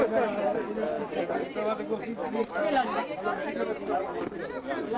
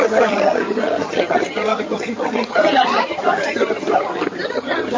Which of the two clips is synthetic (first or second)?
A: second